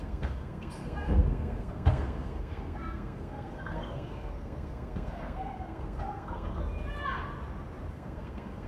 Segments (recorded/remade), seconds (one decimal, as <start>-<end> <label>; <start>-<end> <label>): 0.0-6.6 remade; 6.6-7.9 recorded; 7.9-8.7 remade

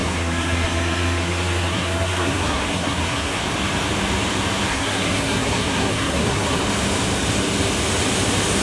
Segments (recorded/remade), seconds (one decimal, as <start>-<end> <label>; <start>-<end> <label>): 0.0-3.4 remade; 3.4-4.7 recorded; 4.7-6.6 remade; 6.6-8.6 recorded